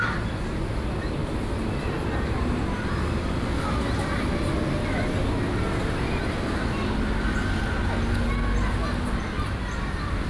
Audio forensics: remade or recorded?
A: recorded